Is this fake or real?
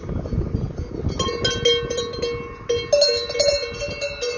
real